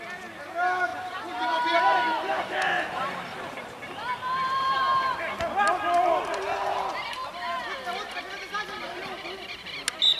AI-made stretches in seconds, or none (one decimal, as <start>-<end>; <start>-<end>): 0.9-5.4